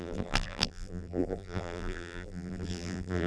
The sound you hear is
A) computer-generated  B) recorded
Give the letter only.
A